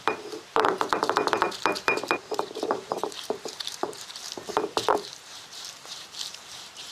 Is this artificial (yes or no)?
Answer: yes